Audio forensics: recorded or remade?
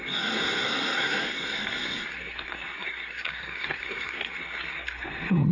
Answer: remade